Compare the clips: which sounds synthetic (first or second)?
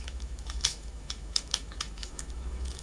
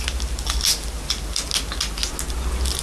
first